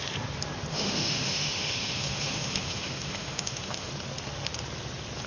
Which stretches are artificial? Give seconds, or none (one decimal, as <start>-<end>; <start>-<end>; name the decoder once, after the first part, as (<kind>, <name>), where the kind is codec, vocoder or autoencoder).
0.7-3.9 (autoencoder, DAC-VAE)